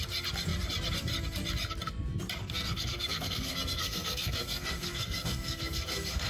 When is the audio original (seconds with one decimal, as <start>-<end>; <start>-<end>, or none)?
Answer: 0.0-2.4